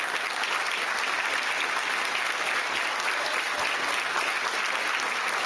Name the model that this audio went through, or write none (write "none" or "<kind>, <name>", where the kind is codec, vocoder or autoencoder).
none